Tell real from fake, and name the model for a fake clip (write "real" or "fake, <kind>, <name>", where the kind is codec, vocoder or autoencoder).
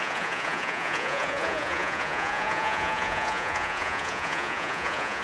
fake, vocoder, Vocos